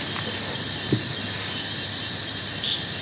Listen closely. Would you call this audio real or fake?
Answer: real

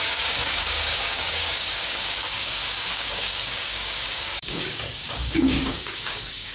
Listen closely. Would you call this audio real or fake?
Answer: fake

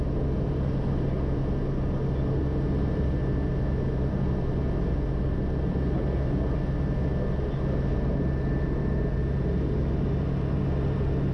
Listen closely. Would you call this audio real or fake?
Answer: real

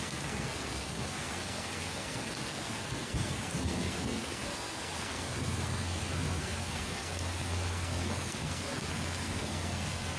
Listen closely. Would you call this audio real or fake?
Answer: fake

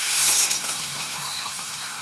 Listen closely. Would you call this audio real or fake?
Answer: fake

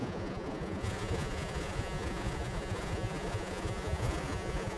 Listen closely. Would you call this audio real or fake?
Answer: fake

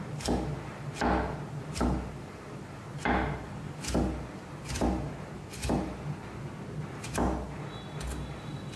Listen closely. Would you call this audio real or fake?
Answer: real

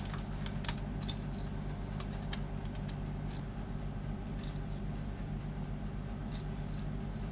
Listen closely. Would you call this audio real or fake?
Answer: real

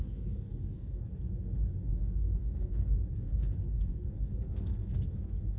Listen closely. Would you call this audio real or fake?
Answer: fake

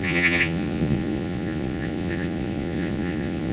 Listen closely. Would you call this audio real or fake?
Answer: fake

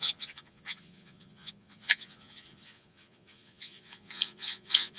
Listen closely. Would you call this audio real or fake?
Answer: fake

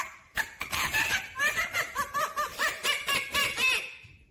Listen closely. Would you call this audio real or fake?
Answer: fake